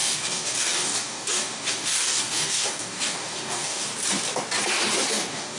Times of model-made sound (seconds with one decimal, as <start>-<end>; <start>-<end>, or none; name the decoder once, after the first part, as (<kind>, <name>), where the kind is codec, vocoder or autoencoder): 0.0-3.9 (codec, DAC); 5.1-5.6